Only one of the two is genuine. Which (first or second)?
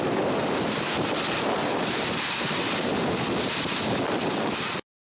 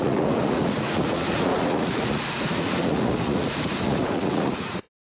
first